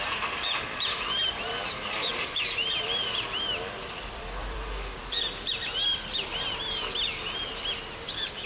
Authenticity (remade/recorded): remade